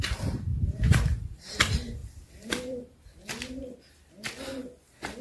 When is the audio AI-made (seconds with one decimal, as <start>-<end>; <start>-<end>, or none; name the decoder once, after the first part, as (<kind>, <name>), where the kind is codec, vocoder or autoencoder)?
0.0-2.0 (vocoder, BigVGAN v2)